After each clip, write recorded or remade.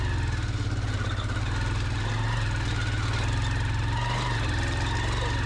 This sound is recorded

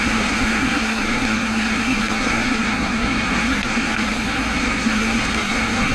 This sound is remade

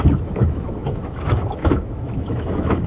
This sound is remade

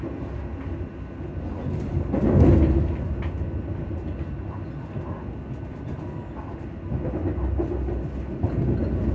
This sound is recorded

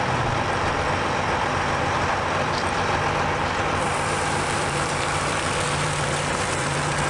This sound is remade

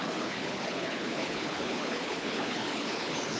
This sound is remade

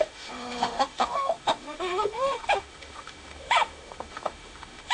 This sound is remade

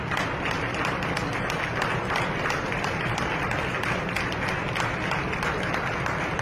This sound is recorded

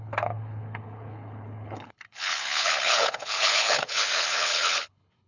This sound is remade